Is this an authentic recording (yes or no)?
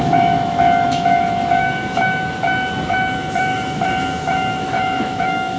no